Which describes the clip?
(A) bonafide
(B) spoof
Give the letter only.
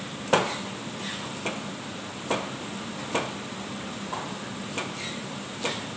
A